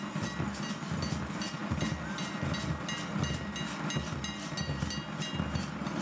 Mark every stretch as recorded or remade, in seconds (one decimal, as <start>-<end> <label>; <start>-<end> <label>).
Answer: 0.0-6.0 recorded